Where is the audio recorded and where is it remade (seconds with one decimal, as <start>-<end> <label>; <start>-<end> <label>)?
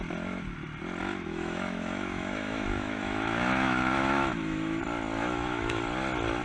0.0-1.0 recorded; 1.0-4.8 remade; 4.8-5.2 recorded; 5.2-5.8 remade; 5.8-6.4 recorded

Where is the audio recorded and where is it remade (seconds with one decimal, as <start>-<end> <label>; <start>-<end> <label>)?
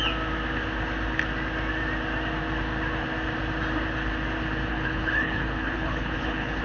0.0-4.7 recorded; 4.7-6.6 remade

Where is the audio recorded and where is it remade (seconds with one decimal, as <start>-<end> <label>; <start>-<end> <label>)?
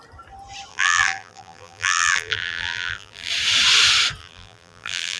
0.0-0.7 recorded; 0.7-3.3 remade; 3.3-4.2 recorded; 4.2-5.2 remade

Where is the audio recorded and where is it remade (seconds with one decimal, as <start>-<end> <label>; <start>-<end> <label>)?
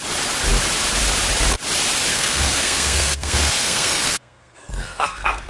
0.0-2.1 recorded; 2.1-5.5 remade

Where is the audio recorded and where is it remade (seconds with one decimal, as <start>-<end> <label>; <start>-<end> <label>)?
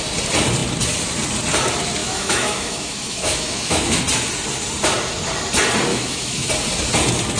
0.0-2.0 recorded; 2.0-4.0 remade; 4.0-5.9 recorded; 5.9-6.5 remade; 6.5-7.4 recorded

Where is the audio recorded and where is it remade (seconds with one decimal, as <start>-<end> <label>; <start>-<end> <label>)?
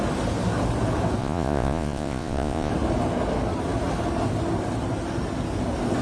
0.0-1.2 recorded; 1.2-2.7 remade; 2.7-6.0 recorded